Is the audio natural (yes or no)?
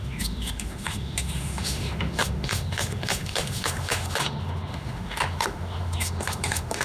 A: no